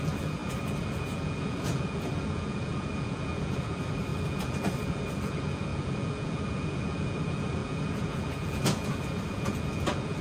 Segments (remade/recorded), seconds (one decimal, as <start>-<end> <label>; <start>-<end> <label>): 0.0-10.2 remade